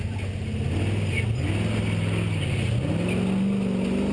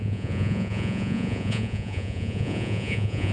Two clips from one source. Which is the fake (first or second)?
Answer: second